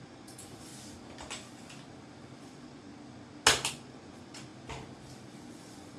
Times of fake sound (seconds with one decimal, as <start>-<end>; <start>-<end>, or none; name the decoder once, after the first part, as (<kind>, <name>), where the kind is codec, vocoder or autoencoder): 0.0-0.7 (vocoder, Vocos); 2.4-2.9; 3.7-4.5; 5.5-6.0